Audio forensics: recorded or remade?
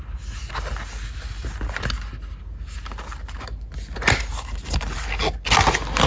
recorded